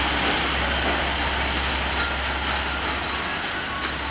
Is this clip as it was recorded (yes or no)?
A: yes